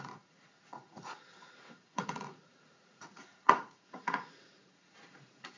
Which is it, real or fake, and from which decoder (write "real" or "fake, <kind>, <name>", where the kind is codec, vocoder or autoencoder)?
fake, vocoder, Vocos